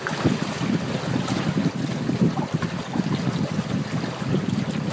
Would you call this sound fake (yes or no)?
no